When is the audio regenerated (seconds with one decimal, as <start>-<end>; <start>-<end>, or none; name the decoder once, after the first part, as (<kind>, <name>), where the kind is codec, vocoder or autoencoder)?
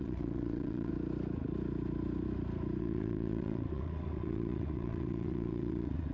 0.0-0.9 (vocoder, WaveNeXt); 2.8-6.1